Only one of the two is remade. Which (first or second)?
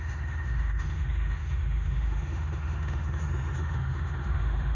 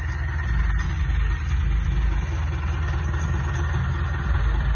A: first